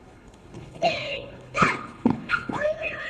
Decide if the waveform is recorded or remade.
remade